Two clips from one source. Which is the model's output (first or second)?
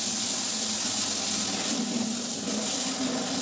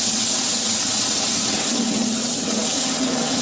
second